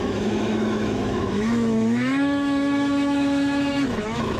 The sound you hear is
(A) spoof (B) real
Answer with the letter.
A